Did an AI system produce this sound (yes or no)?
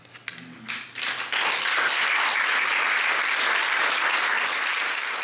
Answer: no